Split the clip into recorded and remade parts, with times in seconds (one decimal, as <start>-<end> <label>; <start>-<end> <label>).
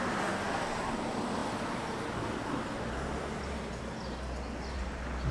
0.0-5.3 recorded